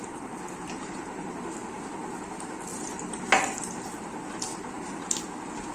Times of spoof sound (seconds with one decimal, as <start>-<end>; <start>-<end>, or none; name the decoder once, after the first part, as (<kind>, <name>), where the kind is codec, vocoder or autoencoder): 0.0-1.4 (vocoder, BigVGAN v2); 2.7-3.7